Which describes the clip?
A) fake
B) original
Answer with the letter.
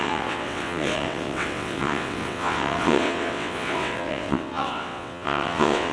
A